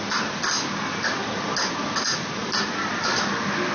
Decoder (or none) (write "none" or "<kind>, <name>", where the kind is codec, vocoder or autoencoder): none